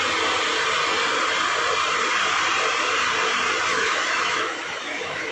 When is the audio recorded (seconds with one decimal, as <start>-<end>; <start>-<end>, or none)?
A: 0.0-3.7